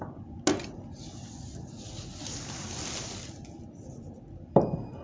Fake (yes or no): no